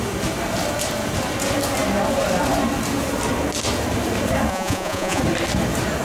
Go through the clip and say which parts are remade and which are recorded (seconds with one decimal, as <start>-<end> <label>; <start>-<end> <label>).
0.0-4.5 recorded; 4.5-5.2 remade; 5.2-6.0 recorded